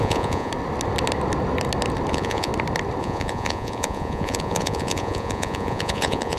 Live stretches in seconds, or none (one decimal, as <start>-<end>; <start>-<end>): 0.5-2.1; 2.5-3.0